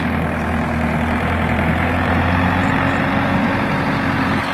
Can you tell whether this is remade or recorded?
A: recorded